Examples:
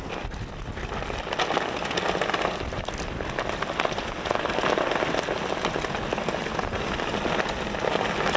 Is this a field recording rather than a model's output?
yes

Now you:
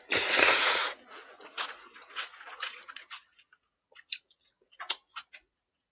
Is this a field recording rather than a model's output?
no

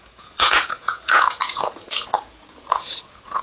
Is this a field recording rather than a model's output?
no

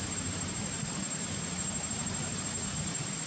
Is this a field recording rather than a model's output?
yes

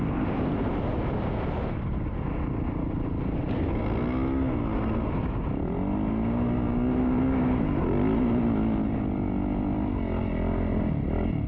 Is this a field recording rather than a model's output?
yes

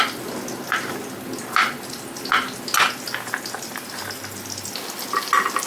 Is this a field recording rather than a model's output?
yes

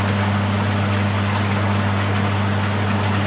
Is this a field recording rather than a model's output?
yes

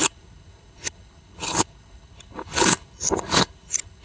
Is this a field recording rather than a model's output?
no